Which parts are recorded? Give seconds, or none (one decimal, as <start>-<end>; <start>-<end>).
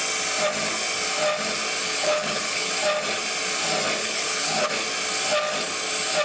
0.0-1.8; 2.7-4.0; 4.7-6.2